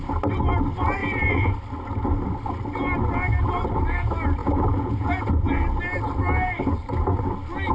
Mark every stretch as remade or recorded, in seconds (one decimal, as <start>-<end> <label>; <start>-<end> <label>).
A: 0.0-1.0 recorded; 1.0-1.5 remade; 1.5-4.4 recorded; 4.4-5.3 remade; 5.3-7.7 recorded